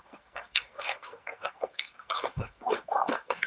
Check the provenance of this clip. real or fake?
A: fake